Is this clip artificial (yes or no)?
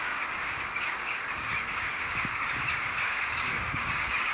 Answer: yes